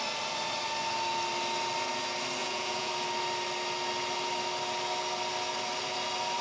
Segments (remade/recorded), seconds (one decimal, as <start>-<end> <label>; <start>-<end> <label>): 0.0-2.4 recorded; 2.4-2.9 remade; 2.9-6.4 recorded